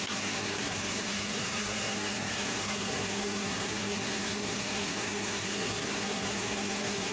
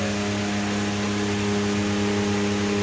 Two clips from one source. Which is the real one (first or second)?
second